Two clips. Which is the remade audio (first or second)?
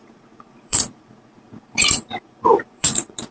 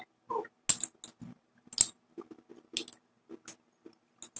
first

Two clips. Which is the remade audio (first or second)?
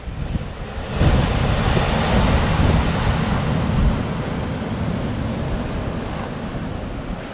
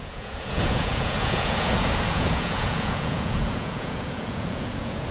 second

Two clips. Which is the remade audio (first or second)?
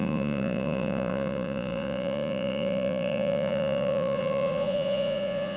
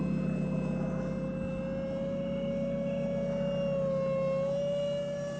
first